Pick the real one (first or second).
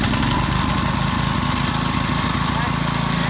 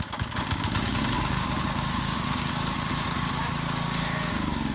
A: first